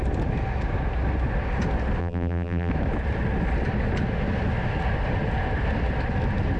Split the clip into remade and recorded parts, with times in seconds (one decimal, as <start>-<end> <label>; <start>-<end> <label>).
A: 0.0-2.0 recorded; 2.0-2.7 remade; 2.7-6.6 recorded